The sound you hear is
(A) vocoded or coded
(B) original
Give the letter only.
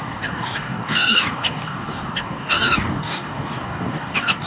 A